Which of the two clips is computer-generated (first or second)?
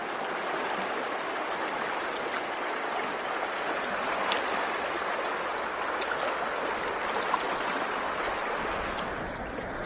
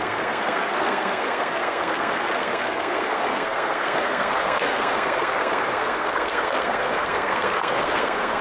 second